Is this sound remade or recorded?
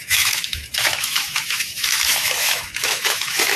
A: remade